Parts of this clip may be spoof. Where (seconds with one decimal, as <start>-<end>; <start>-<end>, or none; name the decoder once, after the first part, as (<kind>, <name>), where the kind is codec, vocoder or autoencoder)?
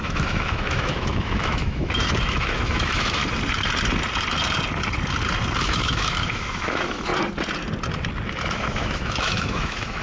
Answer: 0.0-3.2 (autoencoder, DAC-VAE); 5.6-7.1; 8.4-10.0